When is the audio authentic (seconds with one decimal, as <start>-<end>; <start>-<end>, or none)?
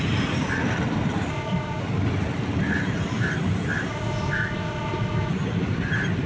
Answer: 0.0-1.3; 1.8-3.9; 5.3-6.3